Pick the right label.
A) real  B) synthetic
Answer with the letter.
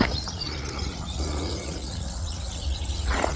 B